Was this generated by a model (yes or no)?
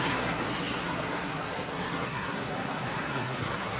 yes